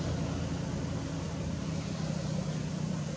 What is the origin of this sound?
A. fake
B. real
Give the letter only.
B